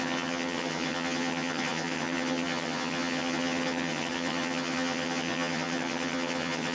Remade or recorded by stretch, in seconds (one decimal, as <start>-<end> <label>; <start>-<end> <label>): 0.0-6.7 remade